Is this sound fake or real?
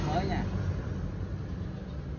real